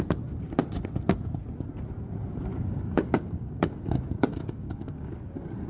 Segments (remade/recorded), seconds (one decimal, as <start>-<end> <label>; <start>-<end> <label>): 0.0-2.5 recorded; 2.5-5.1 remade; 5.1-5.7 recorded